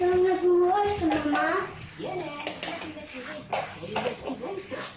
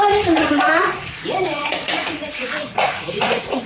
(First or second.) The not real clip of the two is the second